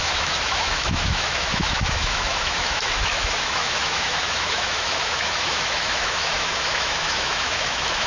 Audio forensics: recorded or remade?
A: remade